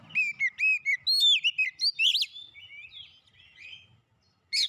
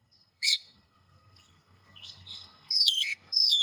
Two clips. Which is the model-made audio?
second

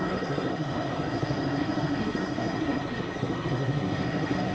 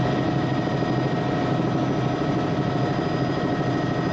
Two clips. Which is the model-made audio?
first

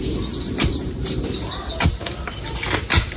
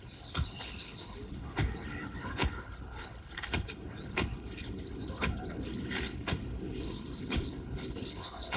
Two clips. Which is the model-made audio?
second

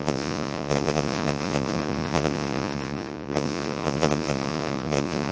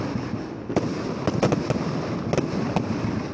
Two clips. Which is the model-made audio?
first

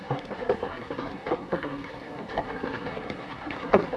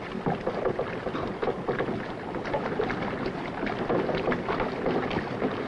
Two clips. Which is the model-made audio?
first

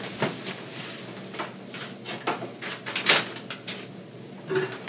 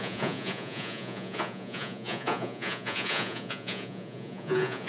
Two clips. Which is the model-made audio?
second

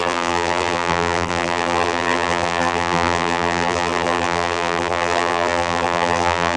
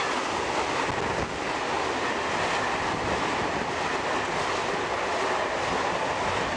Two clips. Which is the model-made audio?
first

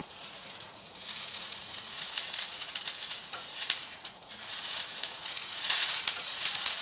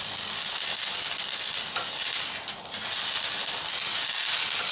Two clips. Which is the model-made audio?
first